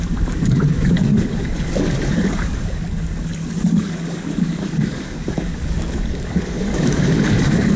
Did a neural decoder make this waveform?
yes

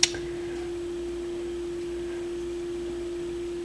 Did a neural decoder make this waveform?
no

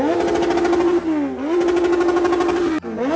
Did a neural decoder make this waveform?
no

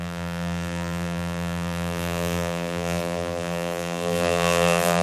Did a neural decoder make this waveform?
yes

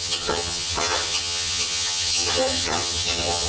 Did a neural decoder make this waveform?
yes